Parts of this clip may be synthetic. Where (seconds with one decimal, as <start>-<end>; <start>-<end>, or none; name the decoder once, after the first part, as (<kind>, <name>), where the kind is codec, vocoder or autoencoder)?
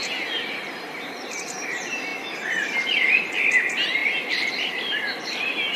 none